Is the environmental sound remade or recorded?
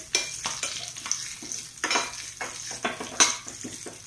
recorded